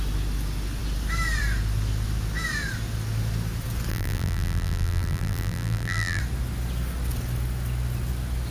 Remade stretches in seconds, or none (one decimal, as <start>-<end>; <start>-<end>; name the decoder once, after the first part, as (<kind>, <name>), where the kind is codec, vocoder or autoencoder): 3.9-6.2 (vocoder, BigVGAN v2)